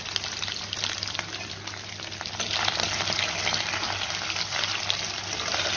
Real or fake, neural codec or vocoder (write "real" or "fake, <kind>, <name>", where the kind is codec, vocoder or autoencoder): real